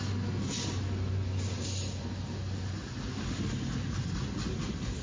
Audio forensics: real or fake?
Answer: real